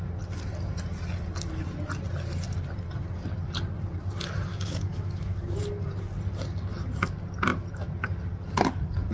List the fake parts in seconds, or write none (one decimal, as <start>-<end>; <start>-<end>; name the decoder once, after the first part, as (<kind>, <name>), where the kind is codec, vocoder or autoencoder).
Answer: 4.5-5.6 (autoencoder, DAC-VAE)

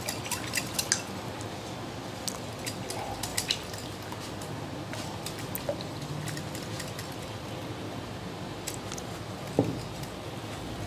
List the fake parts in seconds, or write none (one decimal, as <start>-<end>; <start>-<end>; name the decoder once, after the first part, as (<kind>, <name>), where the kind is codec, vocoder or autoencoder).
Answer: none

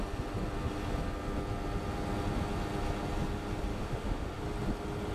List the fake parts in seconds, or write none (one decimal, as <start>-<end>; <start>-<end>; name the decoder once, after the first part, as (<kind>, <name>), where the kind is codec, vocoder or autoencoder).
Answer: 3.7-4.4 (autoencoder, DAC-VAE)